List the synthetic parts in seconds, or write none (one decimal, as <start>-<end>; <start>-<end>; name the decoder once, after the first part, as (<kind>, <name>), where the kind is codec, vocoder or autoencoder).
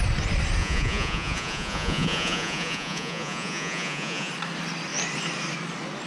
0.6-4.3 (vocoder, Vocos)